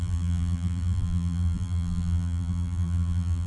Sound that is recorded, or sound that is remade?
remade